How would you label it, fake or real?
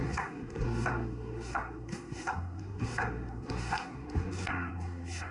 fake